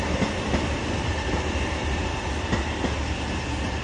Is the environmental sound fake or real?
real